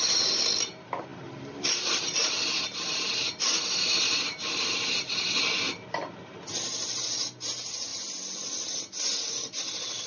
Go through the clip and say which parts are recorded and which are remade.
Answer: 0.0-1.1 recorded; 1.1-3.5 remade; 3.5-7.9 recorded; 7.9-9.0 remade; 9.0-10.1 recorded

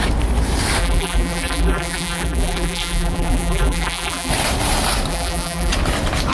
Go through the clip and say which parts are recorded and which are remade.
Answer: 0.0-0.8 recorded; 0.8-4.3 remade; 4.3-5.1 recorded; 5.1-5.7 remade; 5.7-6.3 recorded

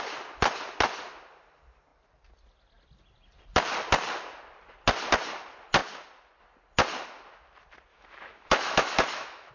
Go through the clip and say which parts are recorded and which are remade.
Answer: 0.0-7.9 recorded; 7.9-9.5 remade

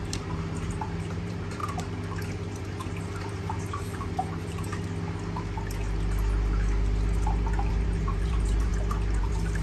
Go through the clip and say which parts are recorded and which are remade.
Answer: 0.0-1.6 remade; 1.6-2.6 recorded; 2.6-4.7 remade; 4.7-7.7 recorded; 7.7-8.7 remade; 8.7-9.2 recorded; 9.2-9.6 remade

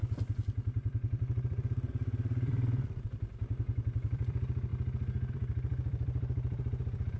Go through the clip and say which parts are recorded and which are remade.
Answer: 0.0-4.7 remade; 4.7-5.3 recorded; 5.3-7.2 remade

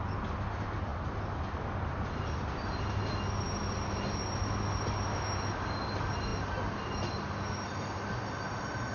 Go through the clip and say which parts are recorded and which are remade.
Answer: 0.0-8.9 recorded

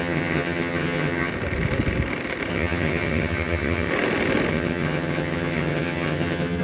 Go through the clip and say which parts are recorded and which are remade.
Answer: 0.0-1.3 remade; 1.3-2.5 recorded; 2.5-3.9 remade; 3.9-4.5 recorded; 4.5-6.6 remade

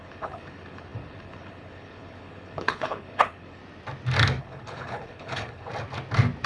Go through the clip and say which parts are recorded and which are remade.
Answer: 0.0-3.6 remade; 3.6-4.4 recorded; 4.4-5.7 remade; 5.7-6.5 recorded